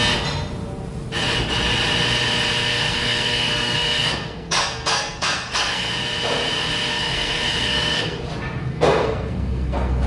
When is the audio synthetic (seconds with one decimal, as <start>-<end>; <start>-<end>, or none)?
2.7-5.9; 6.9-8.2; 8.6-10.1